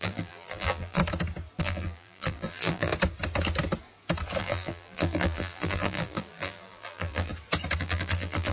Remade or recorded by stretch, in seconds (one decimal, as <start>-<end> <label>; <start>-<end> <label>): 0.0-1.0 remade; 1.0-1.6 recorded; 1.6-2.9 remade; 2.9-4.4 recorded; 4.4-7.3 remade; 7.3-7.8 recorded; 7.8-8.5 remade